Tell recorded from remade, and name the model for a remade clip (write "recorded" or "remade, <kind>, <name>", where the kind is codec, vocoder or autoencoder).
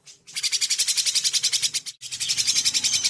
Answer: recorded